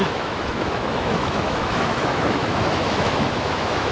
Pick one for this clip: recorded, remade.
remade